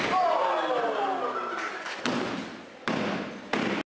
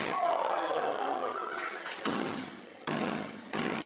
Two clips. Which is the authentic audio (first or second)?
first